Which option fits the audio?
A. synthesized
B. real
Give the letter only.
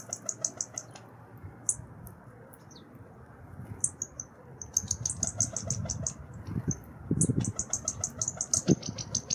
B